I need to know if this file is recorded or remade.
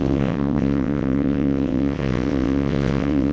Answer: remade